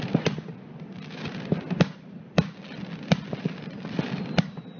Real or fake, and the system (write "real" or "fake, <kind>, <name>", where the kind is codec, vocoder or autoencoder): fake, vocoder, BigVGAN v2